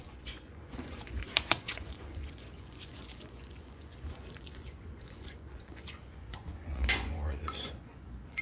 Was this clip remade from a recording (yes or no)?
yes